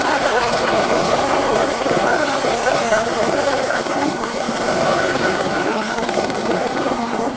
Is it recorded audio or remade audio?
remade